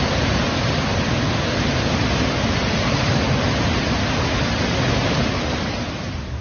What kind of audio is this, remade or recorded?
recorded